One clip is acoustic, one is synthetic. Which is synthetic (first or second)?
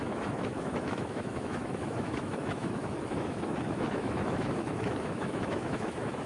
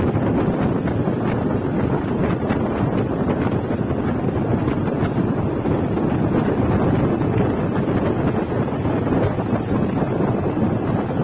first